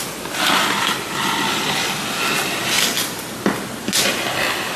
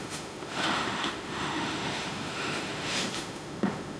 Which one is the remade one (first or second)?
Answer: second